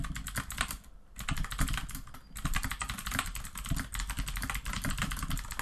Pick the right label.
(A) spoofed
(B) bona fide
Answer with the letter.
B